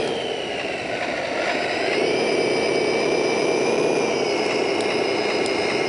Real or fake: real